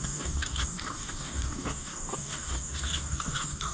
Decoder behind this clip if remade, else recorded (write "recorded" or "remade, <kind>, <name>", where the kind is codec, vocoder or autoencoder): remade, codec, DAC